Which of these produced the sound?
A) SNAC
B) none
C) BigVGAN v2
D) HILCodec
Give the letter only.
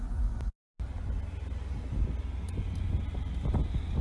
B